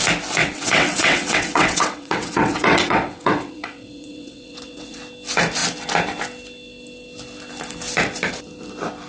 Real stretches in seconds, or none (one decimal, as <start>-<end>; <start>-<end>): 0.0-0.4; 5.0-9.1

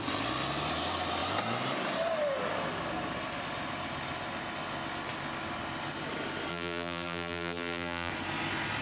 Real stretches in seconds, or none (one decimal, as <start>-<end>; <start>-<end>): 0.0-6.5; 8.1-8.8

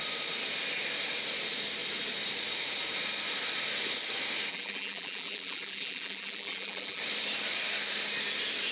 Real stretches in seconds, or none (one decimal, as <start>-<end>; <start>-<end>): 0.0-4.5; 7.0-8.7

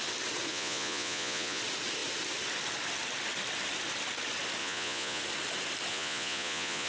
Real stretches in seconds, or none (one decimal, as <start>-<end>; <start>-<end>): 0.0-0.5; 1.6-4.6; 5.2-5.9

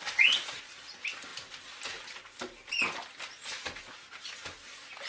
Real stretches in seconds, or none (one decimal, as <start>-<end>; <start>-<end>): 0.0-5.1